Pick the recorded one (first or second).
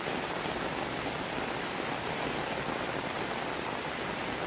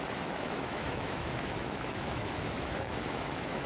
first